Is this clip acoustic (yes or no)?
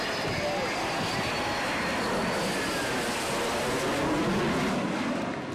yes